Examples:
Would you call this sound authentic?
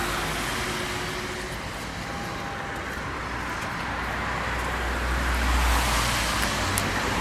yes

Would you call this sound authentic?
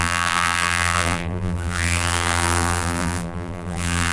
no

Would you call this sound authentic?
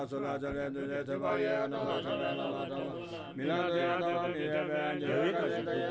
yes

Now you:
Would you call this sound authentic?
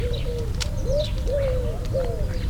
yes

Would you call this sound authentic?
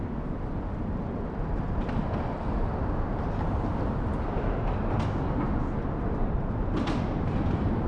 yes